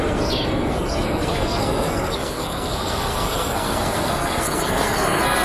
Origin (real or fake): fake